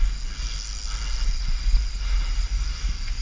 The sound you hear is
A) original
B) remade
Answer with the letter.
A